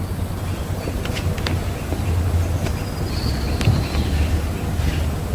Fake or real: real